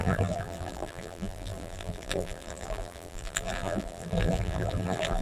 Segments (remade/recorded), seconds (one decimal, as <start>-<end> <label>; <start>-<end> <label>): 0.0-5.2 remade